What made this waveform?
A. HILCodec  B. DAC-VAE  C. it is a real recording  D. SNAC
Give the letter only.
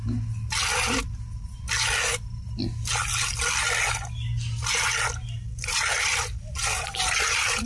C